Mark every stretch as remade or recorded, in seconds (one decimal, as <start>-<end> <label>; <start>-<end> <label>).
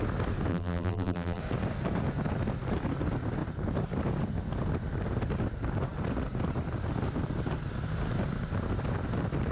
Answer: 0.0-0.5 recorded; 0.5-1.4 remade; 1.4-9.5 recorded